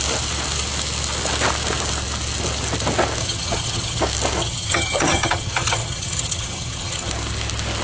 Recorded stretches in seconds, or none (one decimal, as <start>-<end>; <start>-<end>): 0.0-3.2; 4.0-4.4; 7.1-7.8